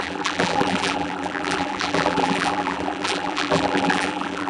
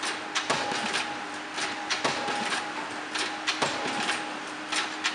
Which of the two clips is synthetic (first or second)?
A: first